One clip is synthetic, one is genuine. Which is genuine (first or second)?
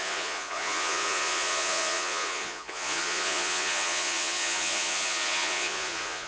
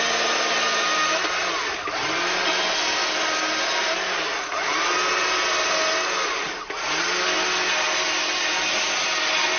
second